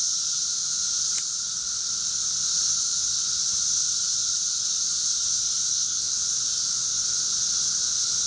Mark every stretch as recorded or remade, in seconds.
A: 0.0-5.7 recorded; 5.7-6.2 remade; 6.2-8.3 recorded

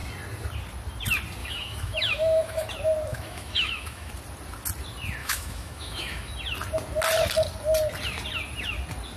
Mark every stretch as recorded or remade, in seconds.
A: 0.0-1.4 recorded; 1.4-2.7 remade; 2.7-3.1 recorded; 3.1-4.1 remade; 4.1-5.2 recorded; 5.2-6.3 remade; 6.3-9.2 recorded

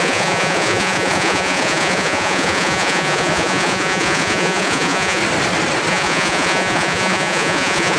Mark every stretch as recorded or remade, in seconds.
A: 0.0-5.2 remade; 5.2-5.9 recorded; 5.9-8.0 remade

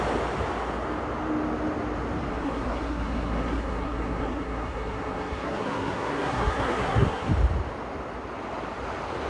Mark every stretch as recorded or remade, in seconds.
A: 0.0-2.3 recorded; 2.3-7.3 remade; 7.3-9.3 recorded

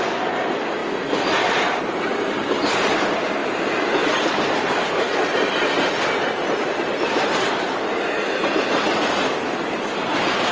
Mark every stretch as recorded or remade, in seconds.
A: 0.0-10.5 recorded

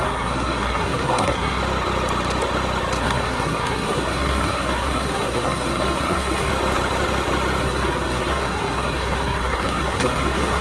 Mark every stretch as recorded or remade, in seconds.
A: 0.0-1.6 remade; 1.6-3.0 recorded; 3.0-6.5 remade; 6.5-7.6 recorded; 7.6-10.6 remade

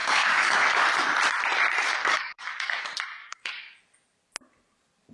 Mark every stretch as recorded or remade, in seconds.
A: 0.0-0.9 remade; 0.9-2.0 recorded; 2.0-2.8 remade; 2.8-3.2 recorded; 3.2-3.8 remade; 3.8-5.1 recorded

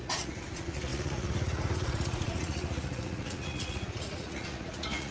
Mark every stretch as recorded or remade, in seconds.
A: 0.0-5.1 remade